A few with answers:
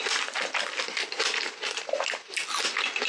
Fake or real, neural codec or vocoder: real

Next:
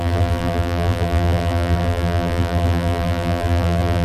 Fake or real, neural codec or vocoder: fake, vocoder, BigVGAN v2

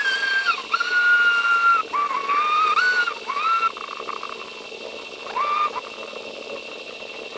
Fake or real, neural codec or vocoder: real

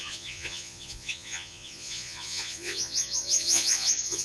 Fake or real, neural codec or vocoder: fake, vocoder, Vocos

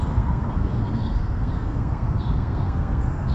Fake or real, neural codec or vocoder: fake, codec, SNAC